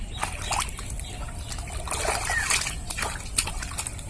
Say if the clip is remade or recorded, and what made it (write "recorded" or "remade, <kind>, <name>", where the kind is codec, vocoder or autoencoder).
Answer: recorded